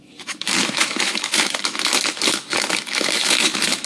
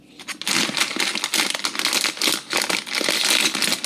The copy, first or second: first